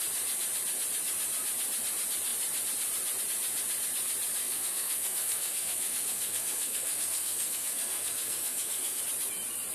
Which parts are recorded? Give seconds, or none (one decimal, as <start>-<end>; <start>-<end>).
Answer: 0.0-4.4; 9.0-9.7